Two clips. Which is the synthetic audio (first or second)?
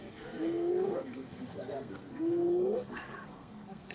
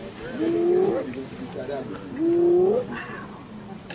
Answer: first